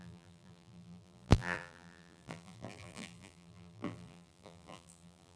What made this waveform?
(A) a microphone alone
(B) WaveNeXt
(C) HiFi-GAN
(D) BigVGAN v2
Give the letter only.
D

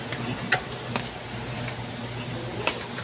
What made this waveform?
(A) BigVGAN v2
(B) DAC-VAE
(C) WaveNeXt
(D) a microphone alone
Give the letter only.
D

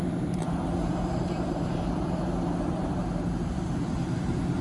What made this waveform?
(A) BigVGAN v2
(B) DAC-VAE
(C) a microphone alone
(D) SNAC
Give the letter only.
A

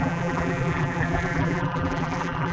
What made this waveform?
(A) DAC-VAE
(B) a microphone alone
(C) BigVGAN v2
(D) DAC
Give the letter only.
C